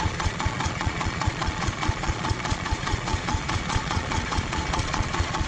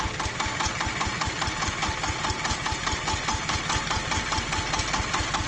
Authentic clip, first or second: second